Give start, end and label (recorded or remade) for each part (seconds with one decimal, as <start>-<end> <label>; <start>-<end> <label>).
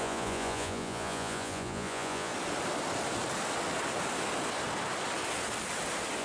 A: 0.0-2.3 remade; 2.3-6.2 recorded